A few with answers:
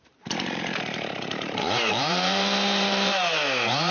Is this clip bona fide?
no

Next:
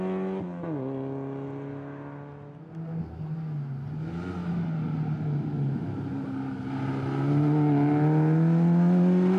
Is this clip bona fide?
yes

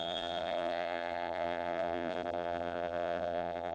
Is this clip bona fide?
no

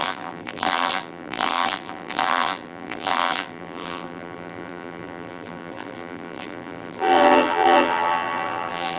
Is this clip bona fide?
no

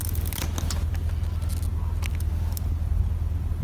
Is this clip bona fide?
yes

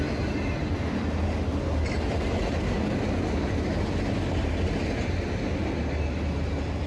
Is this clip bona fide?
yes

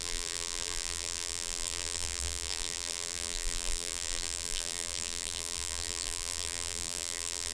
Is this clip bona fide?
no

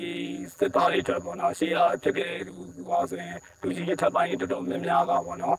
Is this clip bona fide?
no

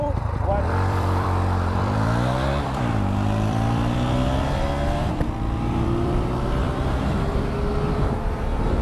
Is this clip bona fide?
no